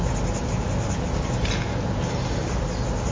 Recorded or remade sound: recorded